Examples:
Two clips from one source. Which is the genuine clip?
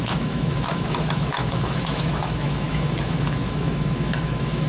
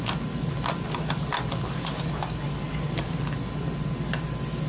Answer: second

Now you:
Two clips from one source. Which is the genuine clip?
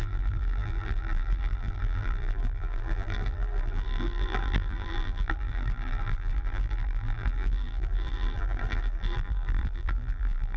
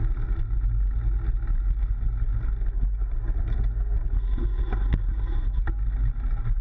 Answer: second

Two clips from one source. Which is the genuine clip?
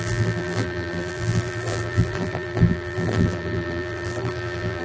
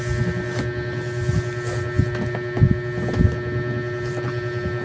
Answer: second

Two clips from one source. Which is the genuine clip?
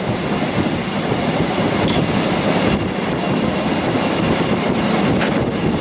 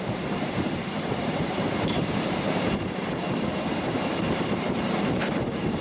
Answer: first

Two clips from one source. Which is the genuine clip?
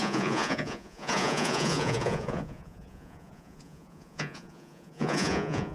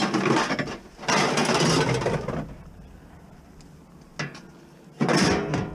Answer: second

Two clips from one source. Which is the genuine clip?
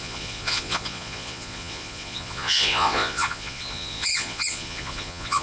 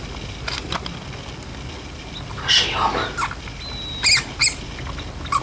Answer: second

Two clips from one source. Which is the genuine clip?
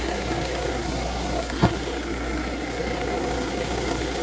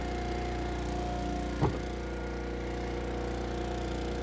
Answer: second